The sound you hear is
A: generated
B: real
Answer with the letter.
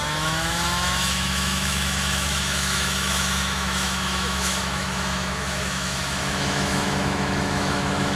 A